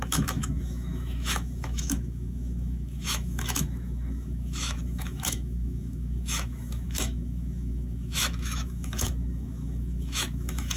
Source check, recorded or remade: remade